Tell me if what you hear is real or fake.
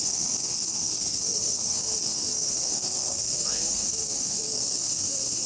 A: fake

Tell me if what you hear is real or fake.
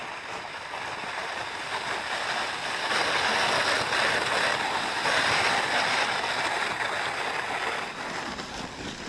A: real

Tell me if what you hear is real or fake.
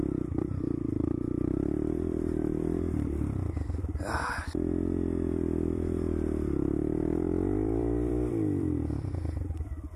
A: fake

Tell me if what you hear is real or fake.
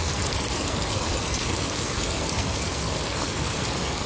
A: fake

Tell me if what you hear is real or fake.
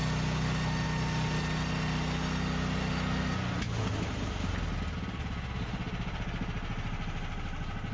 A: real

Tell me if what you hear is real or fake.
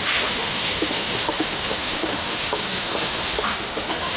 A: fake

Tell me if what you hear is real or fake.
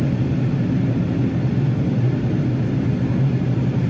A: real